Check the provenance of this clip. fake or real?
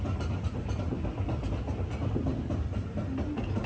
real